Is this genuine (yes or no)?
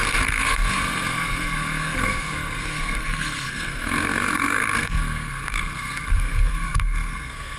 no